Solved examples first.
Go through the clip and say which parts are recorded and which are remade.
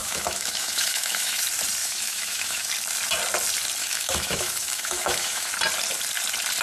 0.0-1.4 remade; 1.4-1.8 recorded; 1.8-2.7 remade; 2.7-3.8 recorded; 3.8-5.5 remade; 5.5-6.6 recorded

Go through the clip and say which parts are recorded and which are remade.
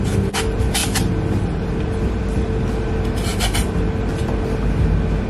0.0-3.3 remade; 3.3-5.3 recorded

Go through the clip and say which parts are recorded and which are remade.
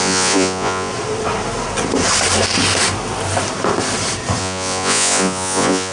0.0-0.9 remade; 0.9-4.4 recorded; 4.4-5.9 remade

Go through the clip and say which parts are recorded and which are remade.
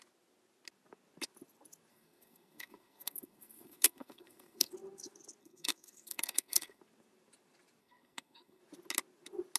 0.0-1.9 recorded; 1.9-4.7 remade; 4.7-5.4 recorded; 5.4-6.8 remade; 6.8-7.8 recorded; 7.8-8.6 remade; 8.6-9.6 recorded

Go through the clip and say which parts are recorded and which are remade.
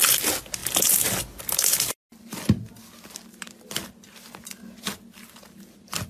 0.0-6.1 recorded